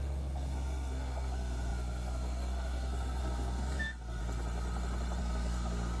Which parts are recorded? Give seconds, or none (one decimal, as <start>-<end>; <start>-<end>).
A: 4.2-5.2